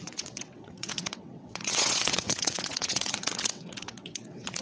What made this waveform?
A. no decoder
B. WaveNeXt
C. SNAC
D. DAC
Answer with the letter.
B